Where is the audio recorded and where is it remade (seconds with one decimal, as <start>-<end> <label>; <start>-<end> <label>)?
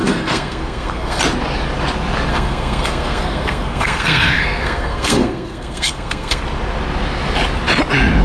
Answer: 0.0-1.2 remade; 1.2-2.3 recorded; 2.3-6.4 remade; 6.4-8.2 recorded